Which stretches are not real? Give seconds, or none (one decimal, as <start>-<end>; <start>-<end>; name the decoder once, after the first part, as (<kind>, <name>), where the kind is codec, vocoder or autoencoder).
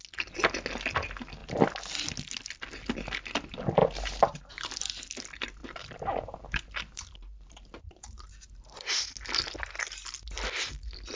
3.8-4.4 (vocoder, BigVGAN v2); 5.6-8.9